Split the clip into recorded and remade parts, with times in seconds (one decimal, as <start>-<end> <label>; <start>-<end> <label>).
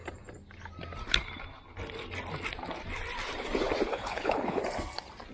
0.0-3.9 recorded; 3.9-4.6 remade; 4.6-5.3 recorded